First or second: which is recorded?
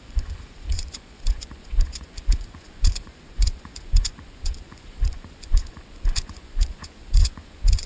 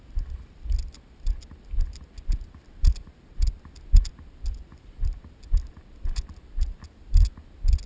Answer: second